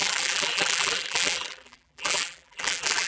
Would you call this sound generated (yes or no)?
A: yes